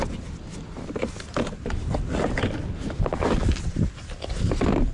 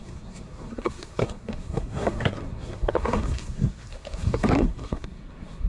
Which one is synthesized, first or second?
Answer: second